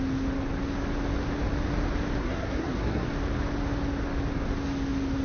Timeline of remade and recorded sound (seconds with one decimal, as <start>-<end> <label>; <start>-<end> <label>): 0.0-2.2 recorded; 2.2-3.1 remade; 3.1-5.2 recorded